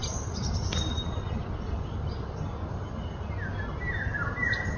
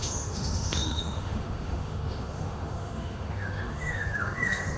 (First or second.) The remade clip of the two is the second